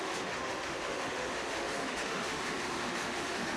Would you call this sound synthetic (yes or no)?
yes